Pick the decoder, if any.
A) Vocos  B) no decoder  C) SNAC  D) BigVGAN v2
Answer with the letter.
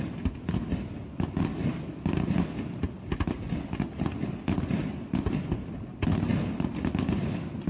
B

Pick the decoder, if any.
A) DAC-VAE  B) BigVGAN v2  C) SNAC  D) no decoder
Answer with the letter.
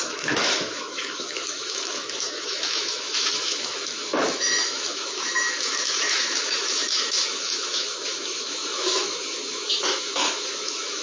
A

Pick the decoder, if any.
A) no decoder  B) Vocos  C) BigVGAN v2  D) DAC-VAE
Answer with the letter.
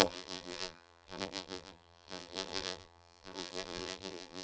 C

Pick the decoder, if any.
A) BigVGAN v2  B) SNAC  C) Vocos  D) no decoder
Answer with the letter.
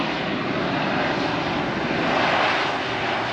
D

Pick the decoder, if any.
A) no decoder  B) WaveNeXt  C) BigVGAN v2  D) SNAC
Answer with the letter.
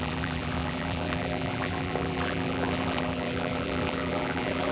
C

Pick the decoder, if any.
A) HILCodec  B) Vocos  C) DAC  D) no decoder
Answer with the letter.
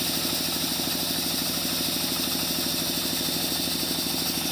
D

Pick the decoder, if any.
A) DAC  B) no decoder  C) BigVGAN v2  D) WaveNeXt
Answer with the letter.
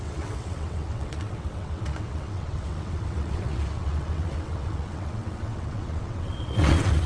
D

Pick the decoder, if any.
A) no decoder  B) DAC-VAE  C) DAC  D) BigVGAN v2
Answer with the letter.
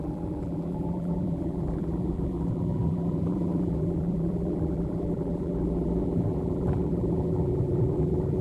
D